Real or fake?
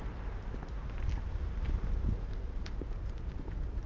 fake